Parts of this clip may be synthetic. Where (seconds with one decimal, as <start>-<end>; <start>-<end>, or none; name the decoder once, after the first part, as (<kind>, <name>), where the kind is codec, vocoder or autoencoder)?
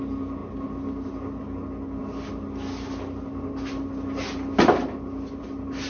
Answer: none